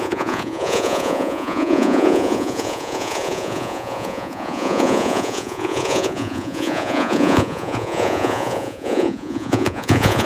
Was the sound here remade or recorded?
remade